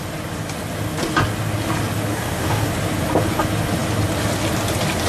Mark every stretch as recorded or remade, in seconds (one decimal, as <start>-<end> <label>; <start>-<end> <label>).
0.0-2.1 recorded; 2.1-2.7 remade; 2.7-5.1 recorded